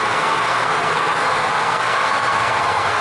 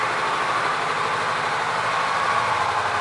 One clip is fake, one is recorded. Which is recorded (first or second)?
second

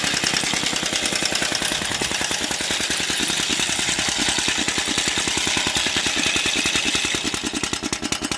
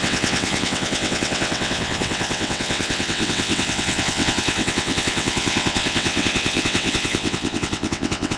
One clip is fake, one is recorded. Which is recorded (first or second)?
first